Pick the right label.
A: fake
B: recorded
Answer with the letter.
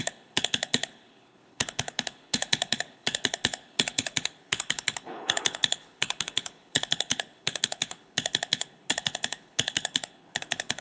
A